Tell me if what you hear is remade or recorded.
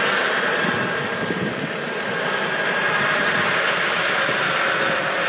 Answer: recorded